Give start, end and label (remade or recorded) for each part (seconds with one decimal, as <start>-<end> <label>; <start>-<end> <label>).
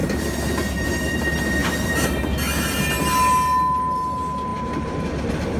0.0-0.7 remade; 0.7-1.6 recorded; 1.6-2.2 remade; 2.2-4.5 recorded; 4.5-5.0 remade; 5.0-5.6 recorded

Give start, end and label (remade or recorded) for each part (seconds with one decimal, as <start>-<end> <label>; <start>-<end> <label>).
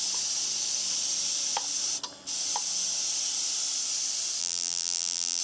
0.0-4.4 recorded; 4.4-5.4 remade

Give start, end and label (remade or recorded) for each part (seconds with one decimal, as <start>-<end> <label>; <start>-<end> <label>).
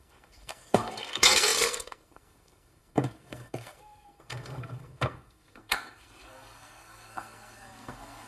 0.0-8.3 remade